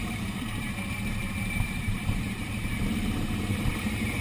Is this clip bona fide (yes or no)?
no